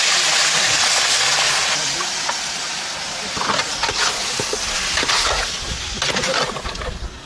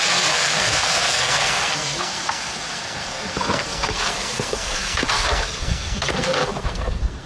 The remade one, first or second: second